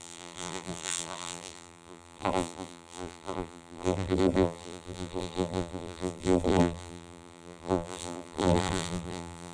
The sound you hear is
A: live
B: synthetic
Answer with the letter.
B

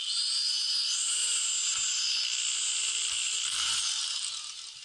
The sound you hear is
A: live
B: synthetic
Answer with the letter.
A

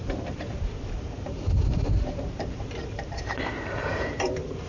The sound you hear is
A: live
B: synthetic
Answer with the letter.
B